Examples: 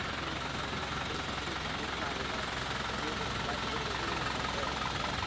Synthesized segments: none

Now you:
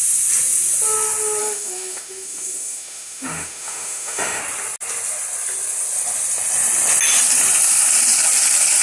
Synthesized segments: 1.4-4.4 (autoencoder, DAC-VAE)

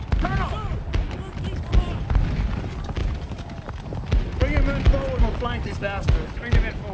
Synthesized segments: none

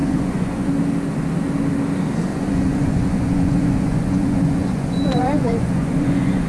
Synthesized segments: 0.0-0.7 (vocoder, Vocos); 2.3-6.5

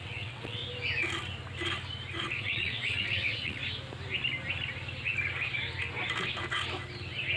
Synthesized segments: 0.0-0.6 (vocoder, WaveNeXt); 2.4-3.6

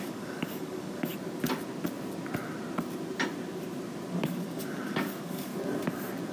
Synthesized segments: 0.0-1.1 (codec, DAC); 4.2-5.5

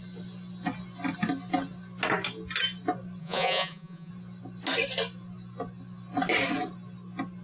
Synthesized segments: 3.2-4.1 (vocoder, Vocos)

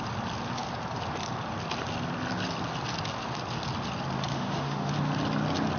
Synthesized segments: 4.3-4.9 (autoencoder, DAC-VAE)